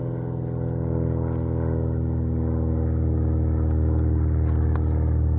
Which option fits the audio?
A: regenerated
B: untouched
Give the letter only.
B